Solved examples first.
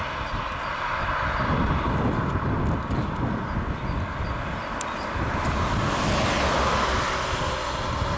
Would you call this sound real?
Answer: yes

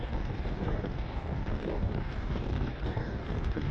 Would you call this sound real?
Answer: no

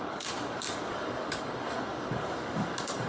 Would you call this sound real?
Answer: no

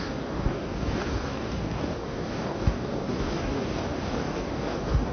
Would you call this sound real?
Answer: no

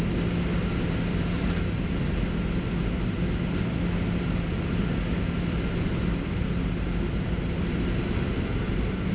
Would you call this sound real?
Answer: yes